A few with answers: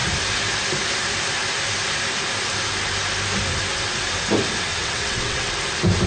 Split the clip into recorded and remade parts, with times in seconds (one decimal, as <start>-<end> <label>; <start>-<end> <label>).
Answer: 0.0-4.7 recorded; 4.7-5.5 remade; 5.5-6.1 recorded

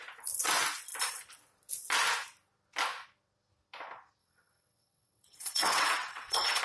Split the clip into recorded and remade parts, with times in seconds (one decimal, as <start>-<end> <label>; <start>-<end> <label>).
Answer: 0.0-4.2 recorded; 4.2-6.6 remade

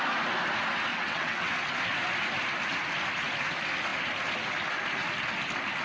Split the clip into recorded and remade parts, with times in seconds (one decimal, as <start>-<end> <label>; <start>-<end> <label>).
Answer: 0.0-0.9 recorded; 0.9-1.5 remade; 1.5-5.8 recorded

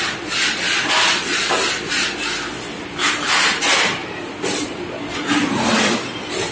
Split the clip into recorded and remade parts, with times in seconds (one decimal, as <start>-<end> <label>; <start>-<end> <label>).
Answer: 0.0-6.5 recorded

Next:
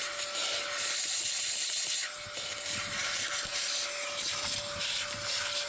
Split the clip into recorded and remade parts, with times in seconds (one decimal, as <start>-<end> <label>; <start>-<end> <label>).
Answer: 0.0-5.7 recorded

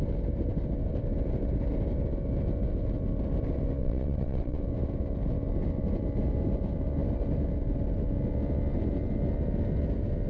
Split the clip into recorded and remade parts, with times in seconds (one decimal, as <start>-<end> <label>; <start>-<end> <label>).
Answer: 0.0-3.8 recorded; 3.8-4.6 remade; 4.6-10.3 recorded

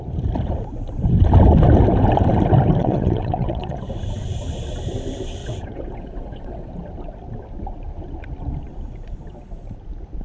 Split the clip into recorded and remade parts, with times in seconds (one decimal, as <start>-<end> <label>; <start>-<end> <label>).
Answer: 0.0-2.8 recorded; 2.8-3.8 remade; 3.8-5.4 recorded; 5.4-6.7 remade; 6.7-10.2 recorded

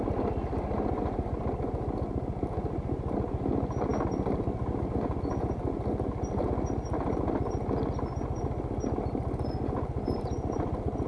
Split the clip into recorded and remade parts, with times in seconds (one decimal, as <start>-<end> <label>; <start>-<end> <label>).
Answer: 0.0-11.1 recorded